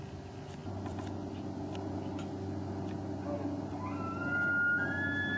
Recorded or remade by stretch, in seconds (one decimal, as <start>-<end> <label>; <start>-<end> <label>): 0.0-5.4 recorded